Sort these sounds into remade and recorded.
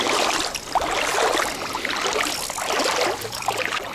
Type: recorded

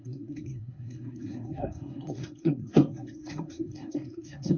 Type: remade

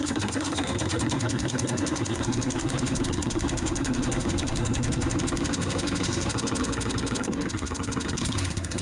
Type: remade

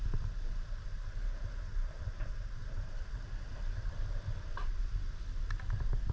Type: recorded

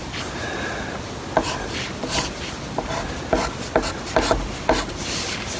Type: recorded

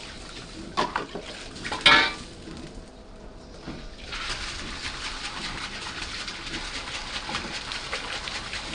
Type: recorded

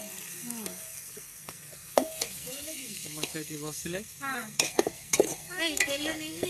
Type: remade